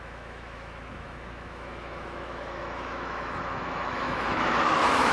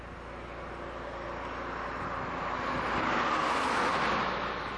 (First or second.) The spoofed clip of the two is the first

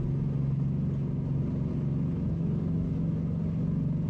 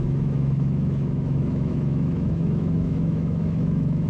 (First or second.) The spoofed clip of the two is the second